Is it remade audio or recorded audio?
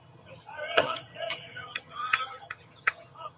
remade